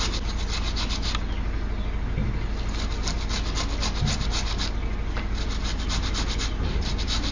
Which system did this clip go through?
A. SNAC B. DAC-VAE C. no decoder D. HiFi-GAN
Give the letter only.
C